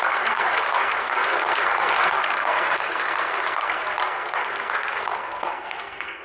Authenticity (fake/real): fake